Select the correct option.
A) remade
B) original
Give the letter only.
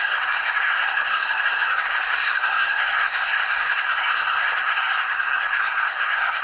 A